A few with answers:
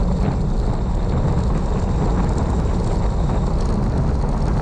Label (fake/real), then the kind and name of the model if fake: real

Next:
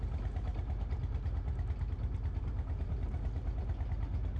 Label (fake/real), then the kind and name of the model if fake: real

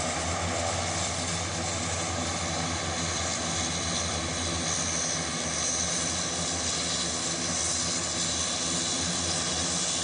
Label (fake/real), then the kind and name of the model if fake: real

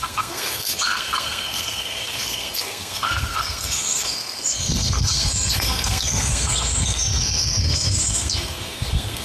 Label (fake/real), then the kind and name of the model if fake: fake, codec, SNAC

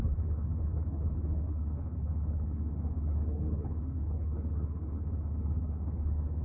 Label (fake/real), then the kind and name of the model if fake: fake, codec, HILCodec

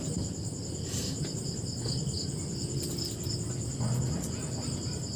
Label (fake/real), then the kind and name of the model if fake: real